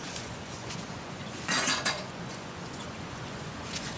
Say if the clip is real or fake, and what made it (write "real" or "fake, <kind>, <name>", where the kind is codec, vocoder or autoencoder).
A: fake, vocoder, Vocos